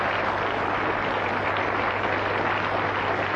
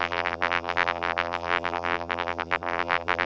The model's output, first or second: second